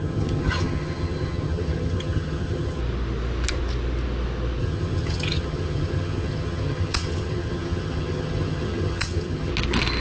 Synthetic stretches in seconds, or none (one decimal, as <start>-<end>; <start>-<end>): 0.0-2.8; 4.6-9.5